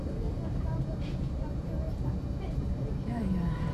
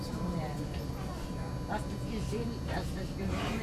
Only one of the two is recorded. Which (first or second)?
second